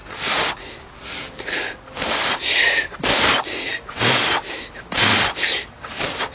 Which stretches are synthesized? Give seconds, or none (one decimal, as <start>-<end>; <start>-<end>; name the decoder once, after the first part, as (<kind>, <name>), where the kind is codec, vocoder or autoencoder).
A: 0.0-1.2 (vocoder, BigVGAN v2); 2.2-2.9